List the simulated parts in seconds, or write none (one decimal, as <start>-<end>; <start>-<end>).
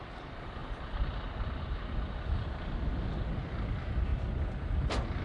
none